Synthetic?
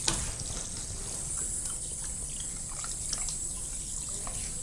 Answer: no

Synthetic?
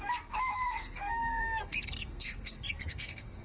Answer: yes